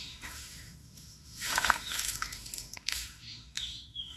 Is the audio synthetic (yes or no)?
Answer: yes